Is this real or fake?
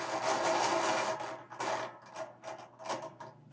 real